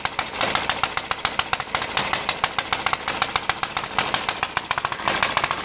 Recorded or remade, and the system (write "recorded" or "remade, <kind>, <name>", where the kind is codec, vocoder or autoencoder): recorded